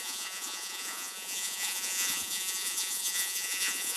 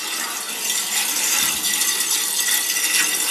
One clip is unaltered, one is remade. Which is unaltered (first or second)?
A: second